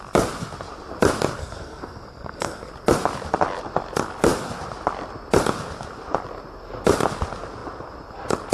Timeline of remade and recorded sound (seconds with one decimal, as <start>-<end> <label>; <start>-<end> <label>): 0.0-1.4 recorded; 1.4-2.7 remade; 2.7-8.5 recorded